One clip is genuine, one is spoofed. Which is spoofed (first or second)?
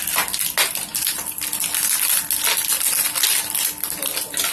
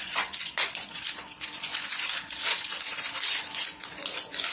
second